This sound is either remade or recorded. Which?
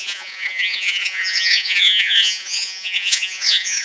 remade